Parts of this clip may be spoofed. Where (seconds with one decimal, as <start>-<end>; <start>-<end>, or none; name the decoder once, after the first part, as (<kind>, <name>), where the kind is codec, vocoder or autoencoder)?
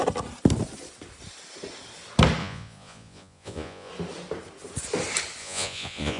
2.4-3.9 (vocoder, Vocos); 5.4-6.2